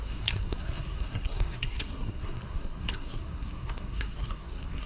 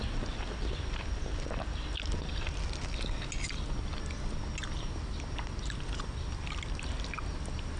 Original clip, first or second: second